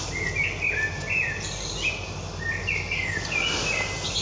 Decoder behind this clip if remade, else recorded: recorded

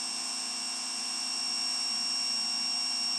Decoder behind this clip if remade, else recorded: recorded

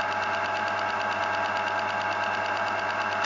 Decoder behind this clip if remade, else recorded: recorded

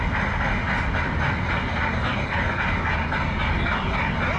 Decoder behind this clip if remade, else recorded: recorded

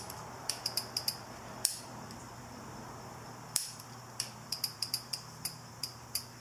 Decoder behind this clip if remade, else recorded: remade, vocoder, BigVGAN v2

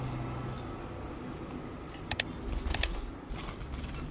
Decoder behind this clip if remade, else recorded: recorded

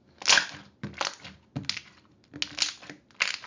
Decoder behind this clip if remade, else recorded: recorded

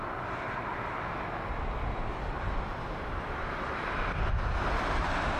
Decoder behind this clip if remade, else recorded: recorded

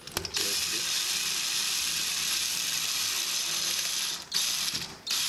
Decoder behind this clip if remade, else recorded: recorded